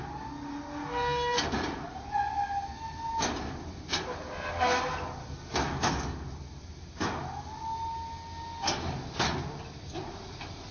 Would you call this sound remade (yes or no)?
no